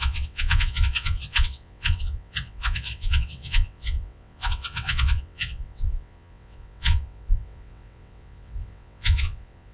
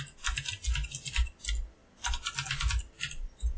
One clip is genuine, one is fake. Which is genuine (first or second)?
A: second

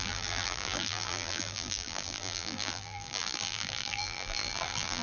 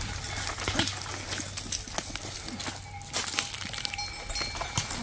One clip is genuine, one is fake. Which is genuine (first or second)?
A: second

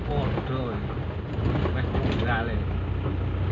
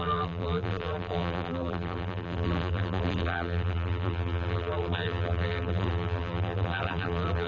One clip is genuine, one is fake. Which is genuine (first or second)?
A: first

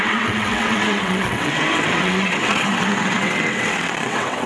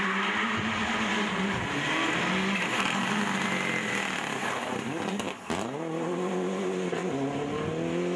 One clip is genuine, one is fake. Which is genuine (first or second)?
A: second